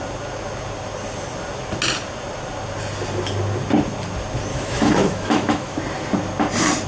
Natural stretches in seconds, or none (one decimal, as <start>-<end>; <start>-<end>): 0.0-4.5; 5.8-6.9